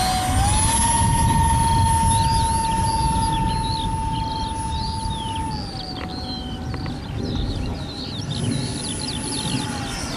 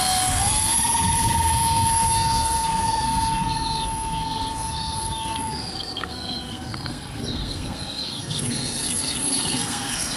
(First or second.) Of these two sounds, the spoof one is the second